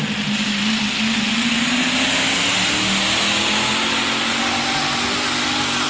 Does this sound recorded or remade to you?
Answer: recorded